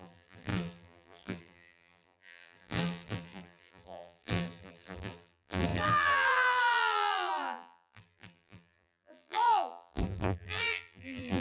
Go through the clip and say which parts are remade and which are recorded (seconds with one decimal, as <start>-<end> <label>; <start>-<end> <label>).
0.0-11.4 remade